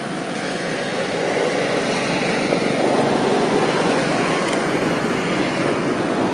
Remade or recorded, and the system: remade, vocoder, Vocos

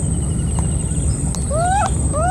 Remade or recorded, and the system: recorded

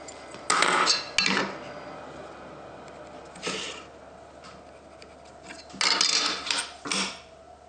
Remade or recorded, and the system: recorded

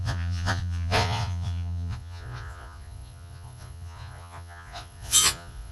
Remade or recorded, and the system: remade, vocoder, Vocos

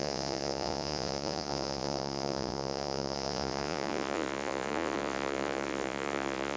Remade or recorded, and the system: remade, vocoder, Vocos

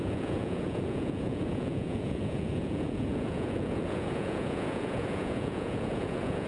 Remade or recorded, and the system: remade, vocoder, Vocos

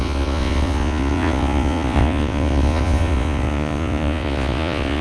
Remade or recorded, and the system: remade, vocoder, Vocos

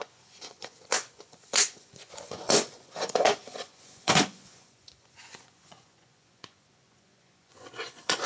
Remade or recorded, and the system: remade, vocoder, Vocos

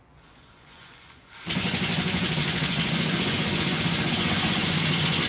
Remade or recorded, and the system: remade, vocoder, Vocos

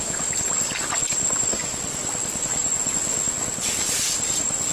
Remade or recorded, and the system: recorded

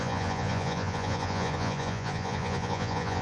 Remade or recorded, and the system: remade, vocoder, Vocos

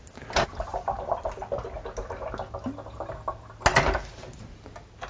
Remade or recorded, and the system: recorded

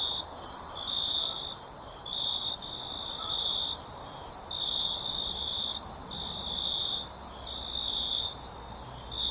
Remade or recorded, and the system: recorded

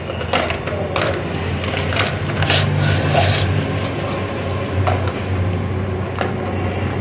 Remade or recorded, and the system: recorded